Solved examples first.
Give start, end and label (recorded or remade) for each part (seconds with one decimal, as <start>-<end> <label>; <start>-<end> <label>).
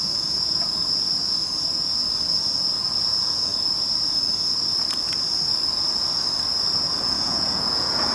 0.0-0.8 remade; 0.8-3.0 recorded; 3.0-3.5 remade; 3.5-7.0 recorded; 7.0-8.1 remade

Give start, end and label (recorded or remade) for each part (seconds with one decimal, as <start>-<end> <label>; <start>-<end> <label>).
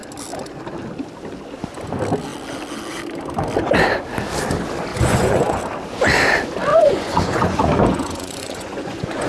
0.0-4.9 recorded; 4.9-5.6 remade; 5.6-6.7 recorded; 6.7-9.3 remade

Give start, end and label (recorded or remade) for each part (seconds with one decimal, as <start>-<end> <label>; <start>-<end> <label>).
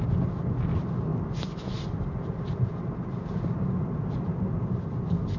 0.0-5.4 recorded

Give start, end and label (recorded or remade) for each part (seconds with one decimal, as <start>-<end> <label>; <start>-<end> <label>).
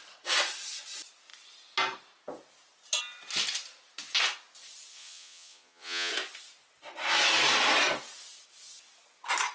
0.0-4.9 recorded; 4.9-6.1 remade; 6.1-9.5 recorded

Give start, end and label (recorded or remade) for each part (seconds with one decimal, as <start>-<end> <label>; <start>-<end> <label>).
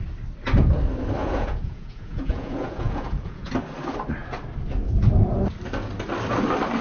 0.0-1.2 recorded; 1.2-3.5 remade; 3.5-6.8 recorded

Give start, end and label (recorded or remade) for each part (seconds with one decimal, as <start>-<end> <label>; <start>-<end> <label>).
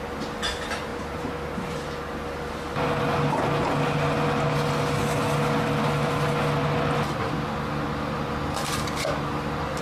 0.0-9.8 recorded